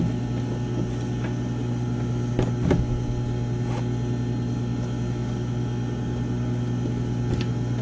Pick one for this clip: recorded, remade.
recorded